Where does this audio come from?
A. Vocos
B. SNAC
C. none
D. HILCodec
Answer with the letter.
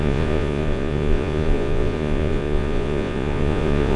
A